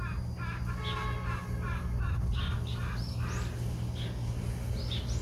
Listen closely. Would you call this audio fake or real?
real